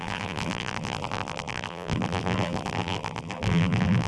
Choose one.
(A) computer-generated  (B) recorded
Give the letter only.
A